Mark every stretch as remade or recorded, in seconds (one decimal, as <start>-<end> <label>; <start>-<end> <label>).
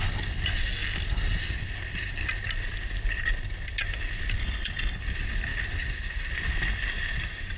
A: 0.0-4.4 recorded; 4.4-5.0 remade; 5.0-7.6 recorded